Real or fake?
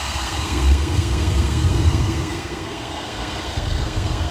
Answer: fake